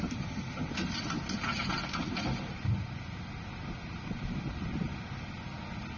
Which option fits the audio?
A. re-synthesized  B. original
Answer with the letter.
B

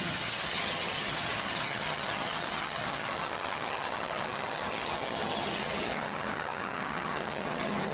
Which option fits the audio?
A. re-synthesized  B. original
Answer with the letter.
A